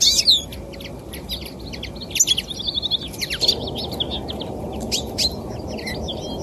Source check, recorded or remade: recorded